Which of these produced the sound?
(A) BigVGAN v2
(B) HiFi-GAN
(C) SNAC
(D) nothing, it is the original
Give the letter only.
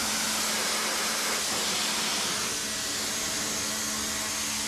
D